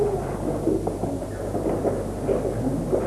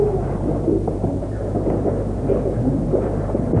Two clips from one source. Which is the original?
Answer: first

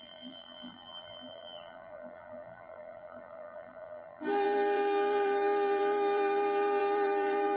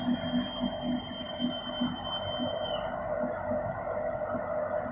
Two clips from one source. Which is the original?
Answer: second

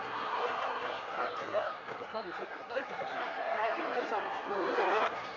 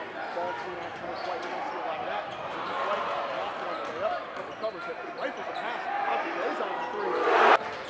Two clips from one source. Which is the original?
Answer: second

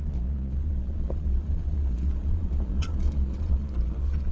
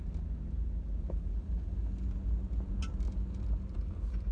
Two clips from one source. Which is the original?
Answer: second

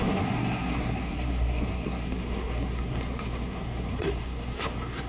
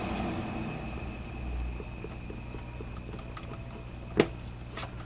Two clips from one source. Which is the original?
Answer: second